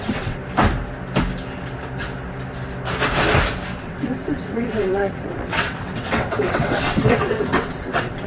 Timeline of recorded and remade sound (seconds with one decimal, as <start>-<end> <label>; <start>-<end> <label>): 0.0-0.4 remade; 0.4-3.8 recorded; 3.8-8.3 remade